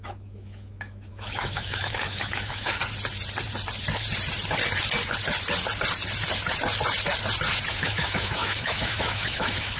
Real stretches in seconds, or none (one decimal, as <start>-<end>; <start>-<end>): 2.8-7.7